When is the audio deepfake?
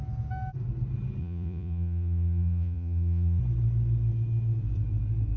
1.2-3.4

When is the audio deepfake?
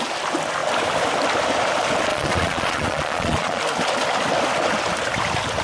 2.1-3.6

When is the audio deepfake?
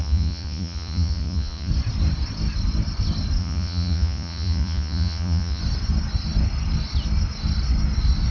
0.0-1.7; 3.4-5.6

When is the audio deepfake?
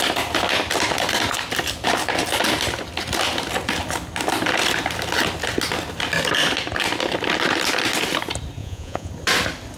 8.6-9.1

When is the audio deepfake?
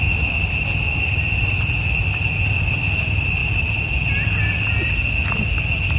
none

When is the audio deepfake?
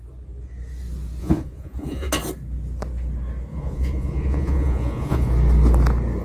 1.2-2.1; 3.5-5.3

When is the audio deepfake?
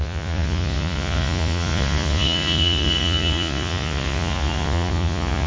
0.0-5.5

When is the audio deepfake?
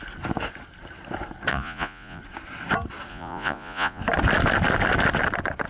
1.5-2.2; 3.1-4.0